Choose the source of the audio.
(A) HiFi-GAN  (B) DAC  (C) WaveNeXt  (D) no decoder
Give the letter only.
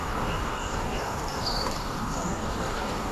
B